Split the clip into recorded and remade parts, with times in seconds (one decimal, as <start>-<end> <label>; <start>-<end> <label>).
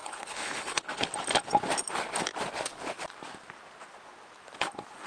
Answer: 0.0-1.1 remade; 1.1-5.1 recorded